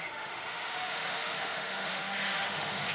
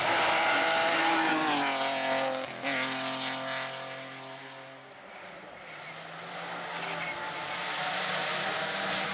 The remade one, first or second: first